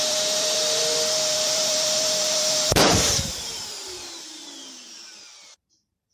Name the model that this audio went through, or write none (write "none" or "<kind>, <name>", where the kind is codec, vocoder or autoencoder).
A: vocoder, BigVGAN v2